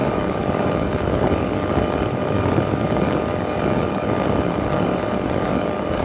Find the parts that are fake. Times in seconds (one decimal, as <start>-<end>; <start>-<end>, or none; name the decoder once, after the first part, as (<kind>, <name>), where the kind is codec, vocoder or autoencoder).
0.0-6.0 (codec, DAC)